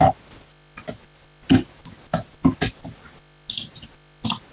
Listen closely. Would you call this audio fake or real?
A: real